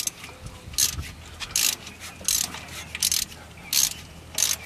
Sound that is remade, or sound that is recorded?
recorded